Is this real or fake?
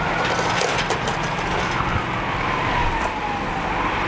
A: real